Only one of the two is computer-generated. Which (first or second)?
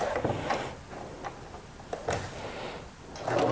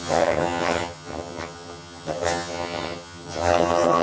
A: second